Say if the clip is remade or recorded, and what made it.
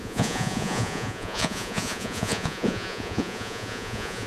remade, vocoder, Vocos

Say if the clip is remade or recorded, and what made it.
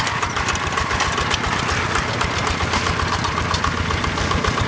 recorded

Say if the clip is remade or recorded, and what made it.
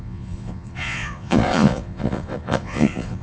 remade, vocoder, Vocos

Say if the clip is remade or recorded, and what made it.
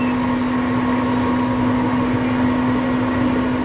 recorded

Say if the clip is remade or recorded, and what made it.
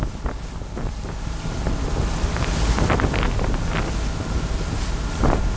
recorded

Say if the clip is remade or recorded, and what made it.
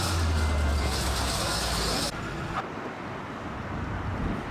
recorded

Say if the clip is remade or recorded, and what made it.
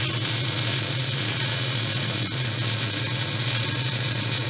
remade, vocoder, Vocos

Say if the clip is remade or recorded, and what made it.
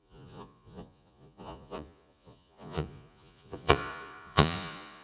remade, vocoder, Vocos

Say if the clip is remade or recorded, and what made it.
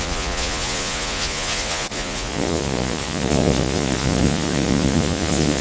remade, vocoder, Vocos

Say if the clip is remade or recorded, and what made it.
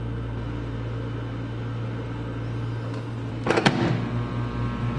recorded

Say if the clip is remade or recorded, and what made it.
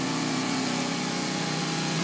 remade, vocoder, Vocos